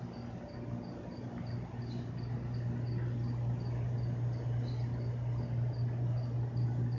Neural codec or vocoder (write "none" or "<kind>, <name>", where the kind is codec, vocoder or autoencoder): none